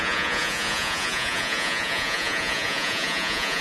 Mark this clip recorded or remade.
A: remade